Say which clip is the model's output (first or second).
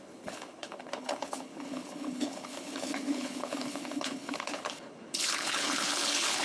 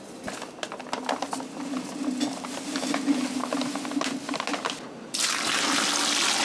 first